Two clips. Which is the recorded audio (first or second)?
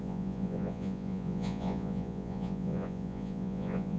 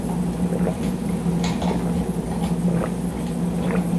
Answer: second